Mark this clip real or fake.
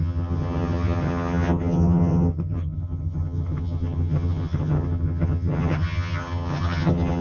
fake